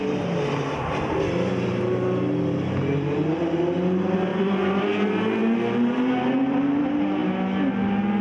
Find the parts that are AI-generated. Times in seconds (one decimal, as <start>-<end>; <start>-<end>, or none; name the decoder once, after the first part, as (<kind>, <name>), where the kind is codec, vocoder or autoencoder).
4.3-4.9 (vocoder, BigVGAN v2)